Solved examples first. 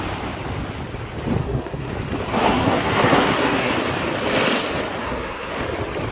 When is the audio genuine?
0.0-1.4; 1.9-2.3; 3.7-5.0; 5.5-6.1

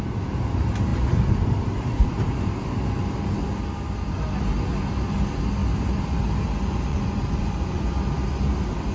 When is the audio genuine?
0.0-6.9; 7.8-8.9

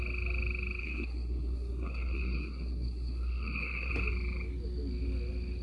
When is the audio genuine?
0.0-0.8; 3.9-5.6

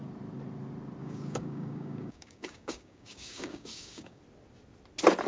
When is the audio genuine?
0.0-1.0; 4.2-5.3

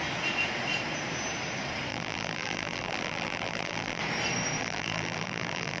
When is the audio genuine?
0.0-1.9; 4.0-4.6

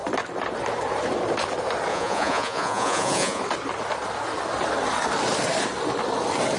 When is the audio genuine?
0.0-1.9; 3.4-6.6

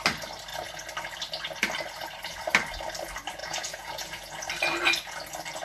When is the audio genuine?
0.0-3.4; 4.4-5.6

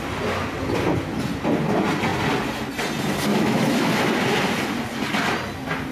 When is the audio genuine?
0.0-3.3; 3.9-5.9